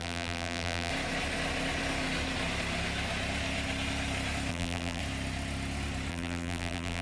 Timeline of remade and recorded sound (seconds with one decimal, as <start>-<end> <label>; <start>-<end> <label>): 0.0-0.9 remade; 0.9-4.5 recorded; 4.5-5.0 remade; 5.0-6.1 recorded; 6.1-7.0 remade